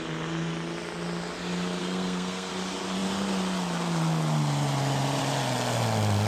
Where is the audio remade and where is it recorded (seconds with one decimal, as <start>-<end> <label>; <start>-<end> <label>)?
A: 0.0-1.8 recorded; 1.8-2.5 remade; 2.5-6.3 recorded